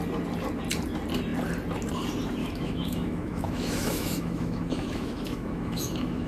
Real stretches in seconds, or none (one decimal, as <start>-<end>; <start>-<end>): 0.0-2.4